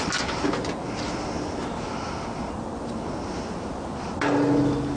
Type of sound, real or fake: real